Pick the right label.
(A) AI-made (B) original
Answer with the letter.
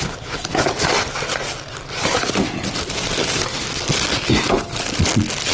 B